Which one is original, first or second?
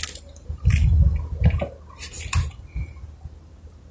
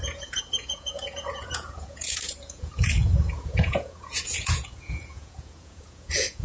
first